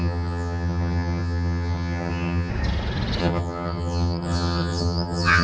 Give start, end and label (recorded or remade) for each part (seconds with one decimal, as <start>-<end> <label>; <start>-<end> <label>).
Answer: 0.0-2.5 remade; 2.5-3.2 recorded; 3.2-5.4 remade